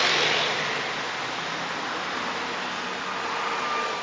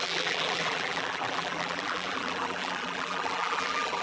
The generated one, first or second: second